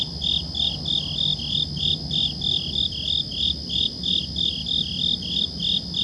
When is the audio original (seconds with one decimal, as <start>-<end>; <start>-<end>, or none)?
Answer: 0.0-6.0

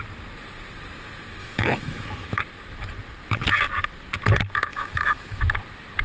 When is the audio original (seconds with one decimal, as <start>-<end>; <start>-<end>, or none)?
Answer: 0.0-1.4; 2.4-4.7; 5.4-6.0

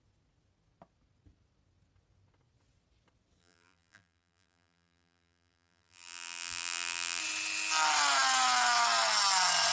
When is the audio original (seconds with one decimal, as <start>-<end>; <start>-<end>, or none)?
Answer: 0.0-3.4; 7.2-9.7